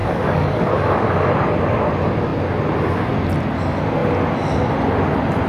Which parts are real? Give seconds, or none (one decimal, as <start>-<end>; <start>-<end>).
1.3-5.5